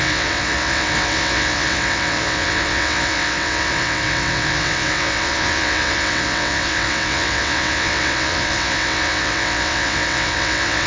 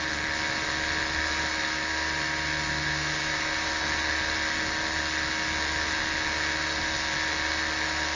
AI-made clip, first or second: first